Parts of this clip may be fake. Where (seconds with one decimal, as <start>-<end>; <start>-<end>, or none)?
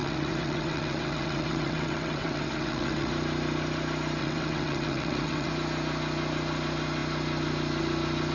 0.0-3.1; 4.2-5.5